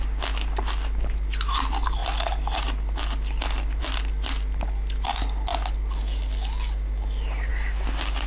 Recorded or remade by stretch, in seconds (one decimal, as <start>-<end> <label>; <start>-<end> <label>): 0.0-8.3 recorded